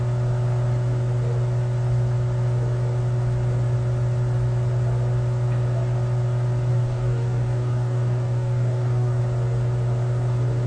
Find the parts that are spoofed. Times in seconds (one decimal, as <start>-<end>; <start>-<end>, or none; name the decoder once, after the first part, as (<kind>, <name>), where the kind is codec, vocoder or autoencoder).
6.7-9.2 (codec, DAC)